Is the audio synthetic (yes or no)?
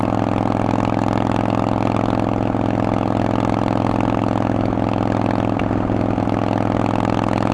no